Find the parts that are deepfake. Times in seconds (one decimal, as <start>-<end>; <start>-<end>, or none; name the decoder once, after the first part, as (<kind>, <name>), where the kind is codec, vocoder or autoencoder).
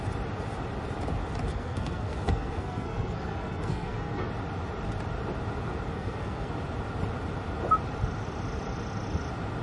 1.5-4.3 (codec, SNAC); 5.9-6.5